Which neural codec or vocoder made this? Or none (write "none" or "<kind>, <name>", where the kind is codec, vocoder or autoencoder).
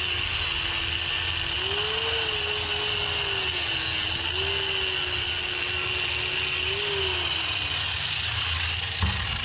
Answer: none